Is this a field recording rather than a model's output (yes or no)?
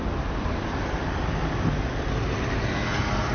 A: yes